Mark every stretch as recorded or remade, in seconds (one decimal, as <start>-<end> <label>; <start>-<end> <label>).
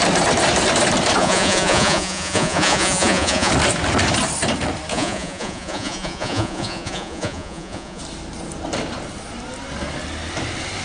0.0-1.2 recorded; 1.2-3.5 remade; 3.5-4.9 recorded; 4.9-8.0 remade; 8.0-10.8 recorded